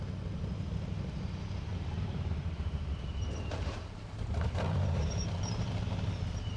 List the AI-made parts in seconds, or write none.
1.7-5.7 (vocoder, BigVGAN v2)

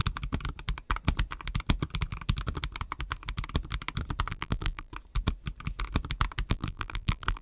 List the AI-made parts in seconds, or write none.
4.3-4.9 (vocoder, BigVGAN v2); 6.5-7.4

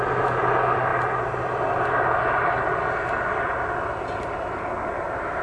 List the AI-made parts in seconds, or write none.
none

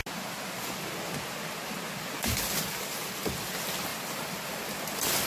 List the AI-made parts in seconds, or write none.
none

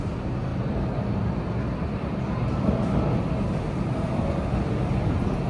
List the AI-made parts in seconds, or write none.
0.5-2.2 (vocoder, BigVGAN v2)

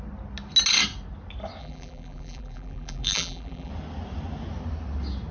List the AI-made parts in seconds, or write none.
1.6-3.7 (vocoder, BigVGAN v2)

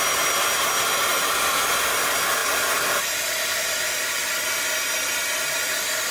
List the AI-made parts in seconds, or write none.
none